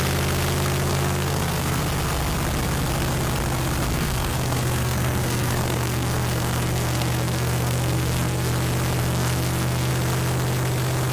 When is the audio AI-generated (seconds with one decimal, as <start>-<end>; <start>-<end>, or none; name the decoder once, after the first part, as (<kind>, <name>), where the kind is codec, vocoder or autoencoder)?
0.9-1.8 (codec, SNAC); 3.9-8.5; 9.0-9.9

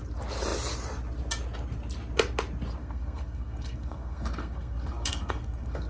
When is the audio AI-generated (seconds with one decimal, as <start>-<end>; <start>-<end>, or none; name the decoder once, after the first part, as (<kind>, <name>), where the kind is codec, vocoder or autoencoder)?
2.8-5.9 (codec, SNAC)